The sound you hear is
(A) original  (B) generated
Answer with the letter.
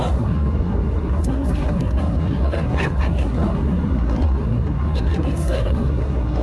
B